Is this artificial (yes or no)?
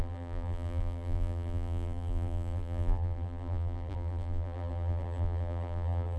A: yes